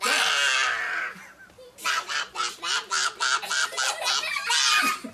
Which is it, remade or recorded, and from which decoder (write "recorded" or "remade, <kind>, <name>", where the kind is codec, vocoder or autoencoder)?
recorded